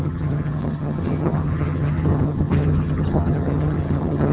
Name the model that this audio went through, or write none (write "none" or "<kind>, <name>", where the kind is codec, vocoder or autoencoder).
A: vocoder, HiFi-GAN